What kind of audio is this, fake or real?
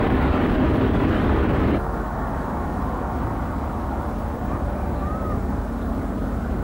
fake